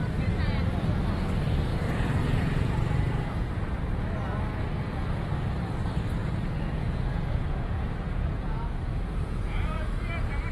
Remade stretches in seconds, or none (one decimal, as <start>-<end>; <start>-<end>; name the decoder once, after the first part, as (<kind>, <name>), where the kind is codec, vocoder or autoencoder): 1.7-3.5 (vocoder, Vocos); 6.2-10.1